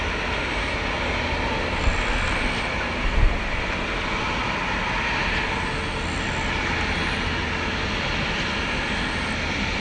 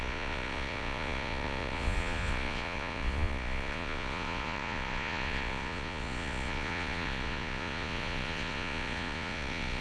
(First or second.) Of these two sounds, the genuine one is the first